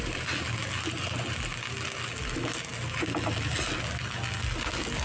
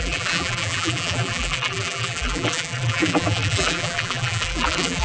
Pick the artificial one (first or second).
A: second